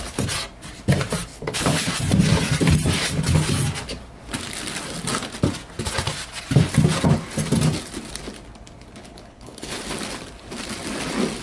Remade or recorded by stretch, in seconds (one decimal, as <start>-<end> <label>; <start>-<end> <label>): 0.0-1.3 recorded; 1.3-1.9 remade; 1.9-9.0 recorded; 9.0-9.8 remade; 9.8-11.4 recorded